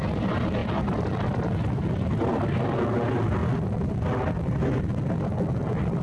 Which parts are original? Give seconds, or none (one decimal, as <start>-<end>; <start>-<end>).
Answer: 0.0-6.0